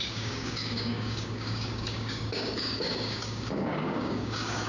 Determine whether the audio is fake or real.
fake